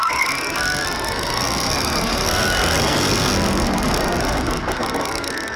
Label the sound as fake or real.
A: fake